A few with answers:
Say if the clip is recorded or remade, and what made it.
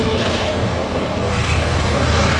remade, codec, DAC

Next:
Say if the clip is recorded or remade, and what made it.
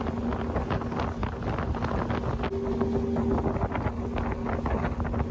recorded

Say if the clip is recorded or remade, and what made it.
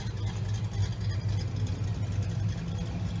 recorded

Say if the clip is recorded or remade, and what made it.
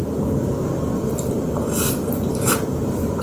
recorded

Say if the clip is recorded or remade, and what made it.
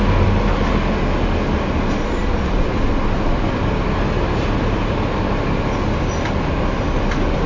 recorded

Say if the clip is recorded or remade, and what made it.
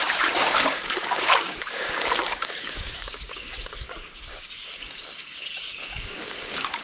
remade, codec, DAC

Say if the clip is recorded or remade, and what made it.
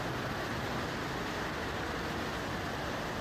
recorded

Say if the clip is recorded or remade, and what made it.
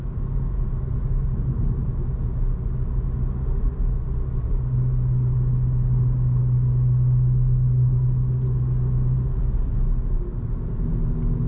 recorded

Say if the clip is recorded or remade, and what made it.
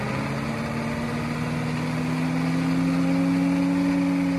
recorded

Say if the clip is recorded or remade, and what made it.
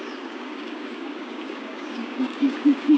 remade, codec, DAC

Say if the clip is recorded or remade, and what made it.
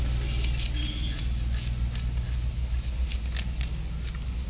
recorded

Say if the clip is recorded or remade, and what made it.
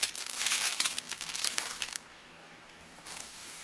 remade, codec, DAC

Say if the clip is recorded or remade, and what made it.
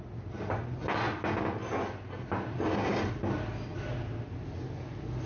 recorded